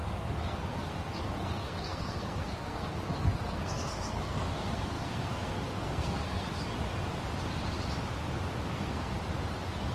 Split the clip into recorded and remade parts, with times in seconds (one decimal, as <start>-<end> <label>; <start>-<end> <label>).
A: 0.0-6.5 remade; 6.5-8.7 recorded; 8.7-9.2 remade; 9.2-9.9 recorded